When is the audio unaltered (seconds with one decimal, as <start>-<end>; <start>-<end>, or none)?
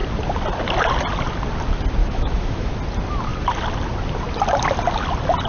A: 0.0-2.0; 2.7-5.5